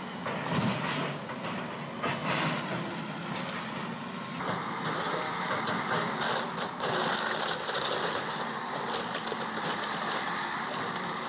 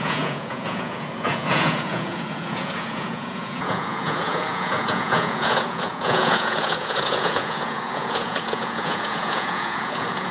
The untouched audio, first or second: first